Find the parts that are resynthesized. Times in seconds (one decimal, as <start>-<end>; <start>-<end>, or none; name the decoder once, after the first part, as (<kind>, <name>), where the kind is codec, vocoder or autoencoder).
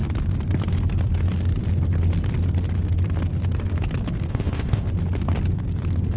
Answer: 4.3-4.9 (codec, ZipCodec)